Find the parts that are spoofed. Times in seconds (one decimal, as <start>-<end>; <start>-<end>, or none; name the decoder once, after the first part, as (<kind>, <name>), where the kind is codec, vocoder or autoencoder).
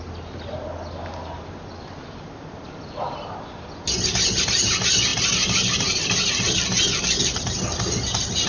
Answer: 5.1-6.4 (vocoder, BigVGAN v2)